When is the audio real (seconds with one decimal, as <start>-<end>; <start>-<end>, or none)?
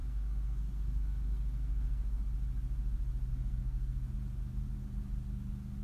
2.2-3.3; 4.1-5.8